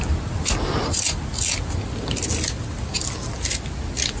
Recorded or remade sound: recorded